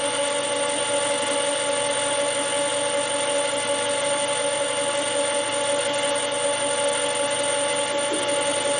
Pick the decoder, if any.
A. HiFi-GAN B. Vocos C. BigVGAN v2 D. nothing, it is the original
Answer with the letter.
D